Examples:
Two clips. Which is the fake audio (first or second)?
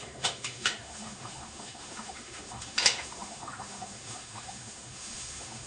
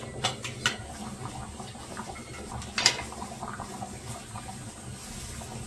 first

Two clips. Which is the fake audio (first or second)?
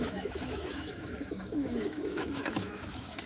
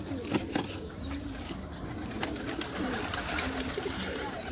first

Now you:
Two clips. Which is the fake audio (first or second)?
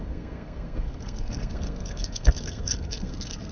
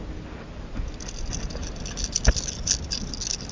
first